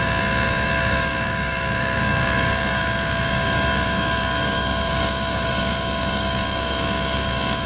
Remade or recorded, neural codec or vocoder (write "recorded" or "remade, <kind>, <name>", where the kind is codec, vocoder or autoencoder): remade, codec, DAC